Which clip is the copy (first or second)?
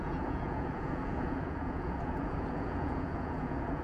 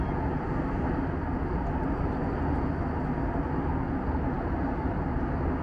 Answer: first